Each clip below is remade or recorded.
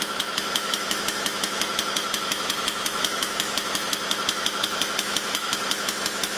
remade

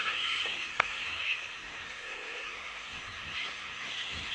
remade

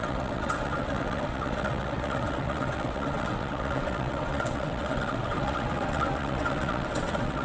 remade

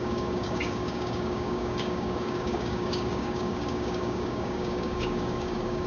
remade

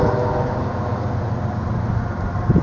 recorded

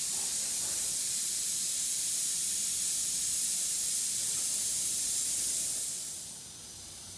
recorded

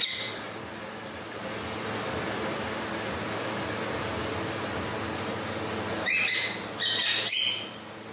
recorded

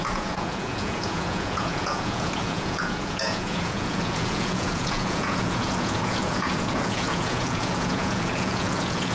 remade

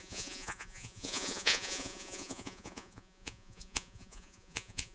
remade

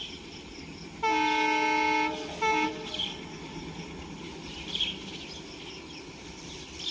recorded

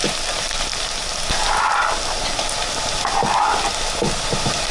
recorded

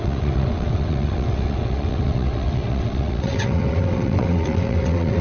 remade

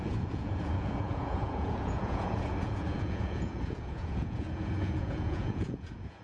remade